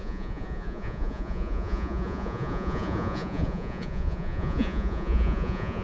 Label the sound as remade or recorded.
remade